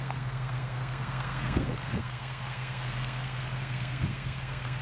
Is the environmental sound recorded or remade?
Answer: remade